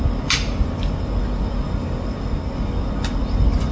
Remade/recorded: recorded